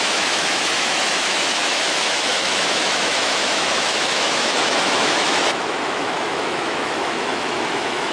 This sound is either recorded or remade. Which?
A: remade